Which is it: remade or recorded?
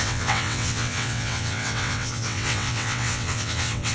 remade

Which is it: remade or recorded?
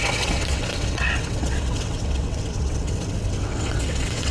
remade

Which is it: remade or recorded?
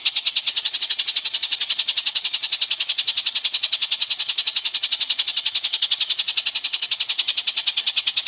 remade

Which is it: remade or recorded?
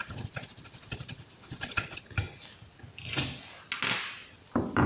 recorded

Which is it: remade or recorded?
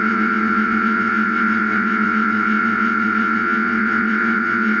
remade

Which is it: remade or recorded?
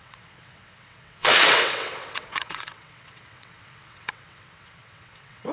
remade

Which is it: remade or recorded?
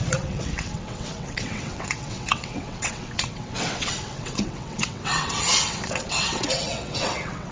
remade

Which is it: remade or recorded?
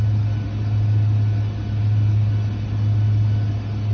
recorded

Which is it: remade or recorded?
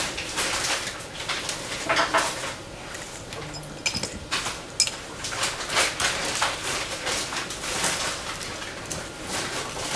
recorded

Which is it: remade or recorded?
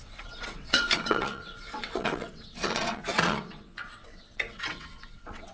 remade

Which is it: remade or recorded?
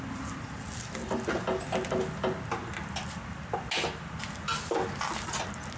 recorded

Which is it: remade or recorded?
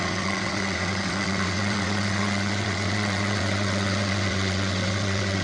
remade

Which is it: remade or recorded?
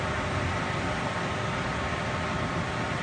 recorded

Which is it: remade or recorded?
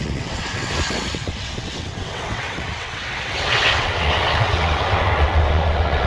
remade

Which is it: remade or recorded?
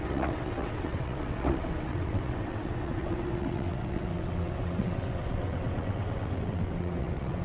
remade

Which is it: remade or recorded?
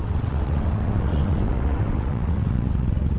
remade